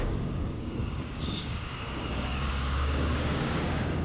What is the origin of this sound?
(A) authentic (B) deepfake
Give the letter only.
B